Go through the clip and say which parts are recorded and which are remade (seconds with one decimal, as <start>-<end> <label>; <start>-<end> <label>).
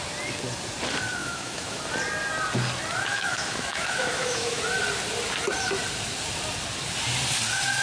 0.0-1.2 recorded; 1.2-1.8 remade; 1.8-3.1 recorded; 3.1-4.6 remade; 4.6-7.8 recorded